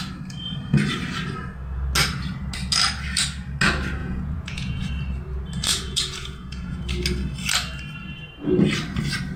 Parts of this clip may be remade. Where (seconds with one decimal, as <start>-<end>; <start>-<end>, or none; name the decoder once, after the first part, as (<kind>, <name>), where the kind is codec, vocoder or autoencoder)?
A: 4.0-4.9 (vocoder, Vocos); 5.7-6.8